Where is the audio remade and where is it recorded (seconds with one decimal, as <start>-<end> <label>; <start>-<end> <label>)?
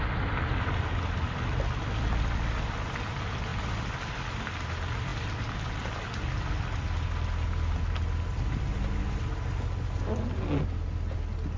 0.0-11.6 recorded